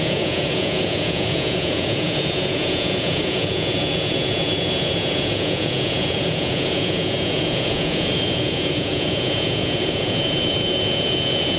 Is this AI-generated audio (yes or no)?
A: yes